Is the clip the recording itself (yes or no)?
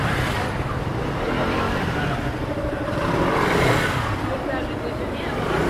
no